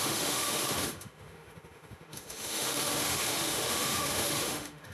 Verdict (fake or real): fake